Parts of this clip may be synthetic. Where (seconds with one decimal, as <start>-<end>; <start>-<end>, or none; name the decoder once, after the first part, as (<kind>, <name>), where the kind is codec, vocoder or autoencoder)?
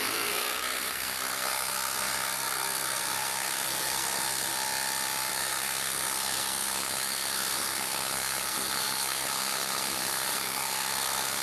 0.0-4.5 (codec, SNAC); 5.3-11.4